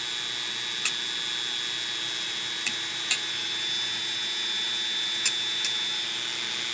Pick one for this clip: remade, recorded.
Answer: recorded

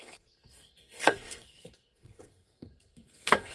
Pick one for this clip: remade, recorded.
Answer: remade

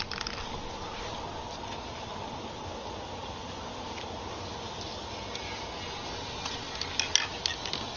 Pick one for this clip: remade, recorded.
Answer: recorded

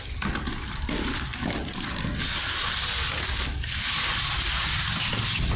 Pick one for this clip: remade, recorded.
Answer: recorded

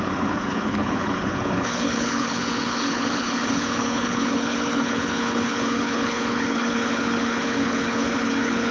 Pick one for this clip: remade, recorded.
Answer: remade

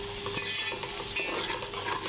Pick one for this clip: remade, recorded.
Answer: recorded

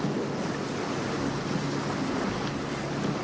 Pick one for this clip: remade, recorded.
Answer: recorded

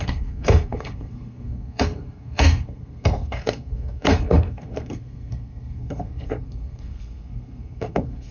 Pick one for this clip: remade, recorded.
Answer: remade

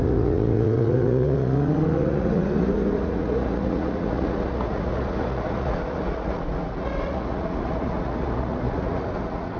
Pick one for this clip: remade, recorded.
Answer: remade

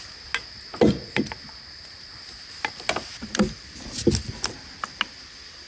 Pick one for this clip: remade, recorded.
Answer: recorded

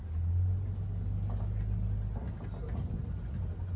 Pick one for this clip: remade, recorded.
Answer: recorded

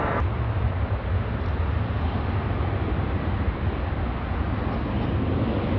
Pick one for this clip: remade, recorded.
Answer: recorded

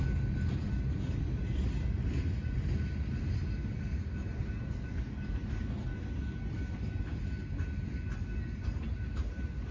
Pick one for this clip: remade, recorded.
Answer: recorded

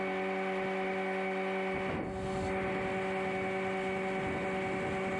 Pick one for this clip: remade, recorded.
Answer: recorded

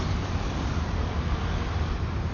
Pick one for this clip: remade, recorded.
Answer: recorded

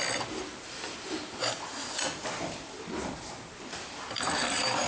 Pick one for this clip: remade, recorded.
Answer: recorded